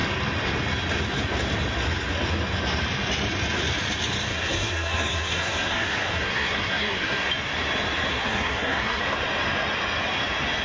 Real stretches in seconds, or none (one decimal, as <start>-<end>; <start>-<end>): 0.0-4.3; 7.3-8.1; 9.0-10.6